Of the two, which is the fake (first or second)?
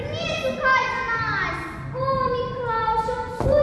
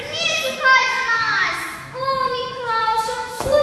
second